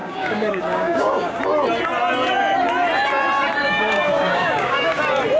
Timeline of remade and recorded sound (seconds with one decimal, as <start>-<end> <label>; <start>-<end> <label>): 0.0-1.4 remade; 1.4-3.6 recorded; 3.6-5.0 remade; 5.0-5.4 recorded